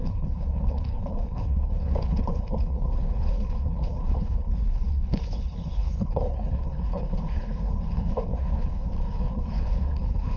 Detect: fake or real fake